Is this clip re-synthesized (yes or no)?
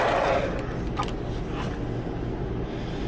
no